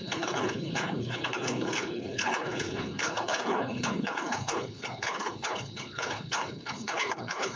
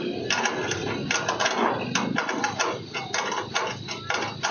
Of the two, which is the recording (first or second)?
second